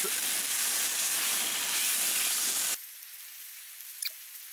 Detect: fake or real real